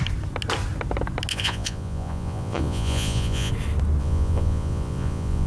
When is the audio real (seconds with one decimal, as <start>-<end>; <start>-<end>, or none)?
0.0-1.3; 3.5-4.0